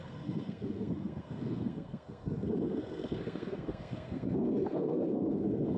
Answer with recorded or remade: remade